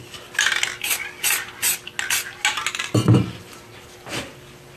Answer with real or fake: real